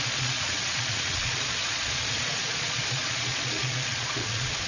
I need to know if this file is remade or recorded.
remade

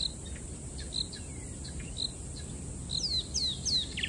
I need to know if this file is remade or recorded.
recorded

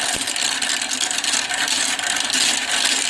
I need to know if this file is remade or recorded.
recorded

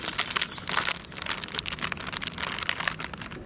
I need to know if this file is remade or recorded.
recorded